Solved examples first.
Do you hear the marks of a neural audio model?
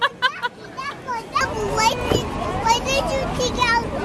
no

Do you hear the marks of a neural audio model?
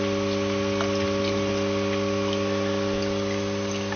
no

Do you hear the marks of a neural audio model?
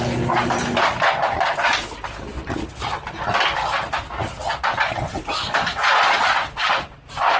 no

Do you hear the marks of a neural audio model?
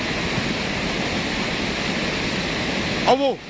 no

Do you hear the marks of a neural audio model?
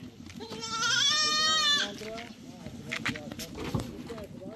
no